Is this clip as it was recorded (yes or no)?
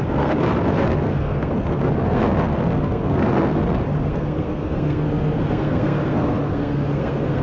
no